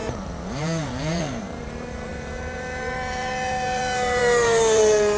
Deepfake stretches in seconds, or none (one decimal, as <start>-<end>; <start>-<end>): 0.0-5.2

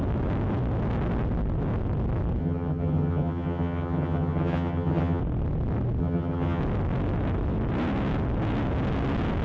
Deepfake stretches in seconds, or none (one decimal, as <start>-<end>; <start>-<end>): 2.4-5.2; 6.0-6.6

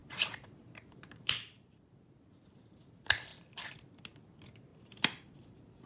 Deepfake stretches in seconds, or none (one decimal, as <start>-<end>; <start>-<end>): 0.0-1.9; 4.7-5.9

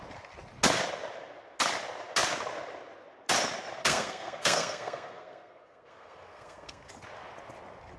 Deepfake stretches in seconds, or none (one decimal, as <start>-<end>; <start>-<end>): 3.8-6.9